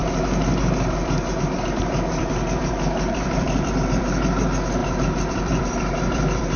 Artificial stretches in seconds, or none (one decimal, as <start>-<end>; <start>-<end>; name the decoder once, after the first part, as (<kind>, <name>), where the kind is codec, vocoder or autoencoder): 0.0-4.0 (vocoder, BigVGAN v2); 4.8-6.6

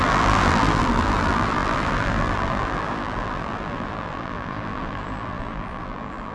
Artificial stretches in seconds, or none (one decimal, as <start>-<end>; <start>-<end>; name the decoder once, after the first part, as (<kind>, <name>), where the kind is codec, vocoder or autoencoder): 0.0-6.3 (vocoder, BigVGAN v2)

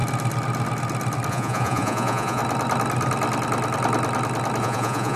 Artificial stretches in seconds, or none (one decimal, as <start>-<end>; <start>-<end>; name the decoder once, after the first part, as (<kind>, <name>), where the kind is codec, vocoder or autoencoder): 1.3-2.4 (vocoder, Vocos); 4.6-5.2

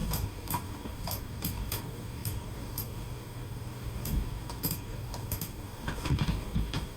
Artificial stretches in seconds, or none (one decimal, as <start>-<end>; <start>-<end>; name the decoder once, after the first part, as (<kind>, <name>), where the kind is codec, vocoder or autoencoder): 0.0-7.0 (codec, DAC)